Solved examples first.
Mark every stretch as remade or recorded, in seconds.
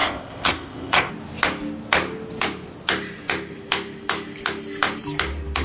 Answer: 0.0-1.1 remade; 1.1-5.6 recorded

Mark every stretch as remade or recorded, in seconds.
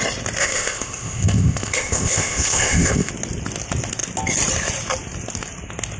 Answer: 0.0-0.4 recorded; 0.4-3.1 remade; 3.1-6.0 recorded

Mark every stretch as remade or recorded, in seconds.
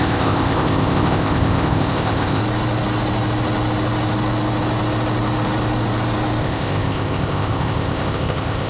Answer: 0.0-2.4 remade; 2.4-6.4 recorded; 6.4-8.7 remade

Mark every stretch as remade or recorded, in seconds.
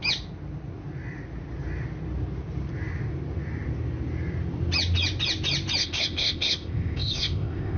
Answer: 0.0-5.8 recorded; 5.8-7.8 remade